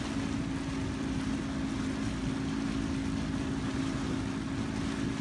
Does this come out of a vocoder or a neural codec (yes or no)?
no